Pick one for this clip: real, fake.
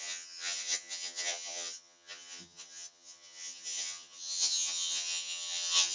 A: fake